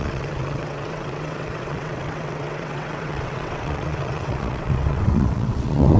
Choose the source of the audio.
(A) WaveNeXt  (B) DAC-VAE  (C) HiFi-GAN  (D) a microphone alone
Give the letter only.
A